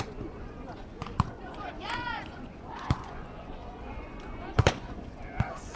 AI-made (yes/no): yes